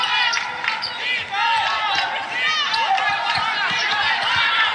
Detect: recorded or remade recorded